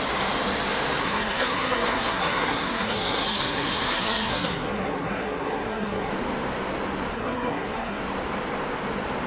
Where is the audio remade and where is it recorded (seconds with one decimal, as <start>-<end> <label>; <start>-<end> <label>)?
0.0-1.0 recorded; 1.0-6.1 remade; 6.1-7.1 recorded; 7.1-8.0 remade; 8.0-9.3 recorded